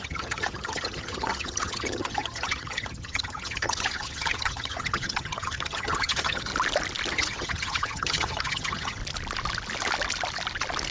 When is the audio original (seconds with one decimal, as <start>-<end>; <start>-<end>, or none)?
6.5-7.1; 9.0-10.9